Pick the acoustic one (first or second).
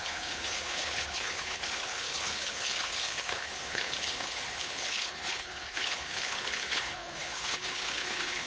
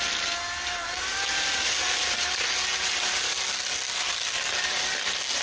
second